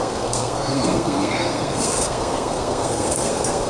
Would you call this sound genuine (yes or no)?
no